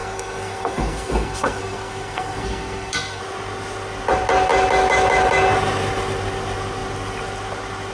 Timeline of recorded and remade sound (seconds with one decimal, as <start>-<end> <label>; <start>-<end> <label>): 0.0-3.2 remade; 3.2-7.9 recorded